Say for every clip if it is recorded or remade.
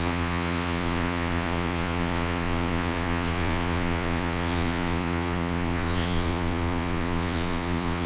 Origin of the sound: remade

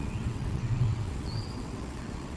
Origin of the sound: remade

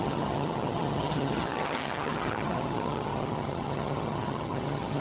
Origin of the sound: remade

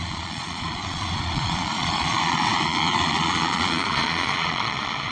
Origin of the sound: remade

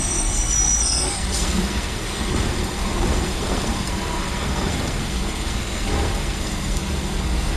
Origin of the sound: remade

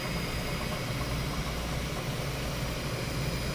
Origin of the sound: recorded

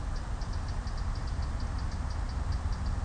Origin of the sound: recorded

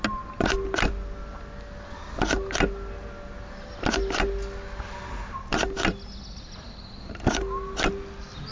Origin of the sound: recorded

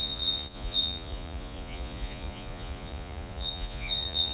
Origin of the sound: remade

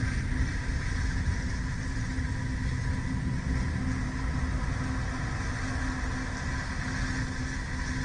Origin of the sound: recorded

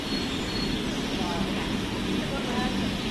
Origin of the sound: recorded